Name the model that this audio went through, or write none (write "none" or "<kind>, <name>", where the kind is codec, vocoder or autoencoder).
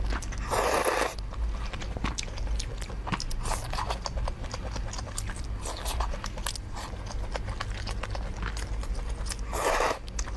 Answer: none